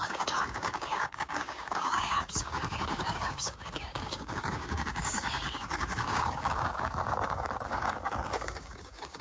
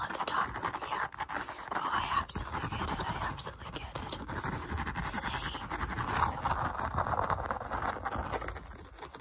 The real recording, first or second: second